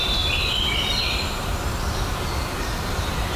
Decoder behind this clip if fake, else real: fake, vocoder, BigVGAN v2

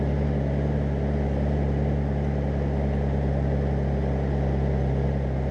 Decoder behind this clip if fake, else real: real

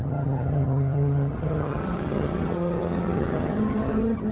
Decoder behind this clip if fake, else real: fake, vocoder, HiFi-GAN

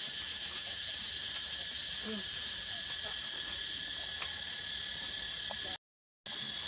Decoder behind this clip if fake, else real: real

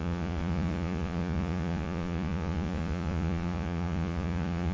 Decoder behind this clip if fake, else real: fake, vocoder, Vocos